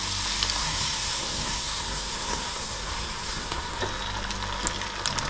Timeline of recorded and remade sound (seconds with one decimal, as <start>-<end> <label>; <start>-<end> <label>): 0.0-0.6 recorded; 0.6-3.8 remade; 3.8-5.3 recorded